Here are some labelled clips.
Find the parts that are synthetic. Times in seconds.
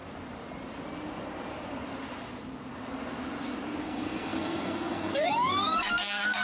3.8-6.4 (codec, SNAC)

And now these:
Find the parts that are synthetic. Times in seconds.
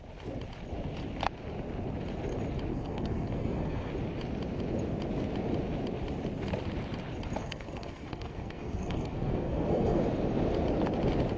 2.7-3.9 (codec, SNAC); 7.4-10.0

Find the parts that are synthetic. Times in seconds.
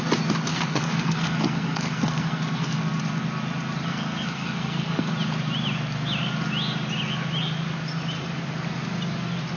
0.5-2.8 (codec, SNAC); 3.9-5.1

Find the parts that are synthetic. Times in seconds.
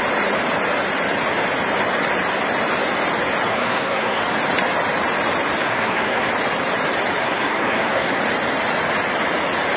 3.5-4.2 (codec, SNAC); 5.6-6.3; 7.2-8.2